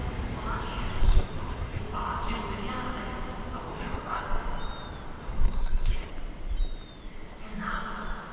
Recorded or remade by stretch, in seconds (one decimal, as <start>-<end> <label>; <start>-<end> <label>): 0.0-1.0 recorded; 1.0-1.8 remade; 1.8-3.7 recorded; 3.7-4.2 remade; 4.2-5.2 recorded; 5.2-6.1 remade; 6.1-8.3 recorded